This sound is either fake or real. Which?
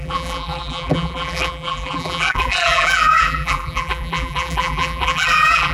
fake